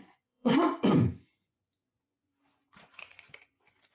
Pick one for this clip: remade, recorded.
remade